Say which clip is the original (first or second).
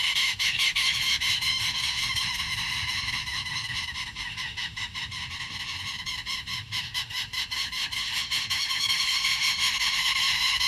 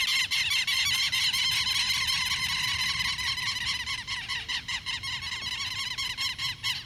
second